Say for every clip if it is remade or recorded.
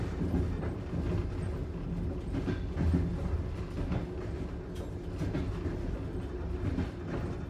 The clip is recorded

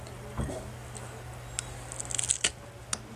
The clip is recorded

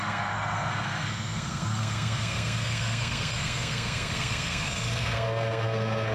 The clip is remade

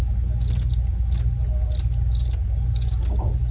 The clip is recorded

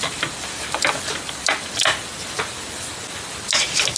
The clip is recorded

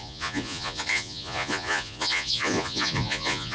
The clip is remade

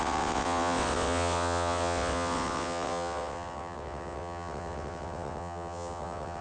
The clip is remade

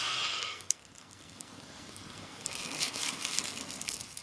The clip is remade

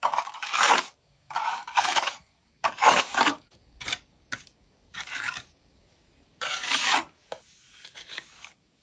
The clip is remade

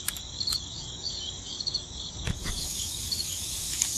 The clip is remade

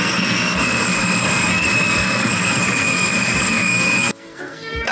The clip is remade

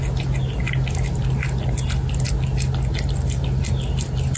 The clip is recorded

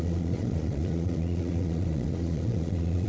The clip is remade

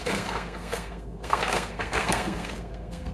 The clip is remade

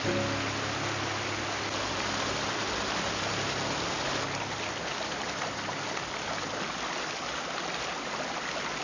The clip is recorded